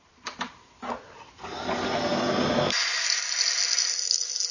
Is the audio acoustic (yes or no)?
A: yes